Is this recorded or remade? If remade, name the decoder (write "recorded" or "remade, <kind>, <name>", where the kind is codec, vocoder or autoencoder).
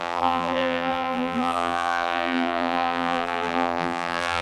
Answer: remade, vocoder, BigVGAN v2